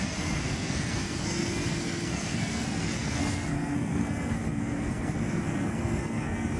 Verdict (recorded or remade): remade